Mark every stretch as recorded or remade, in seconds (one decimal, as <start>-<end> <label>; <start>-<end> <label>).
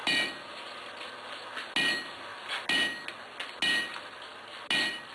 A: 0.0-5.1 recorded